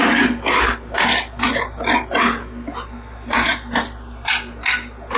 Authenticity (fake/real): real